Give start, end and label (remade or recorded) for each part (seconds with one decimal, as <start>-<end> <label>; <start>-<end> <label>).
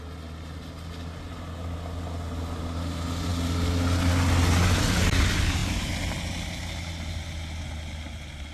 0.0-8.5 recorded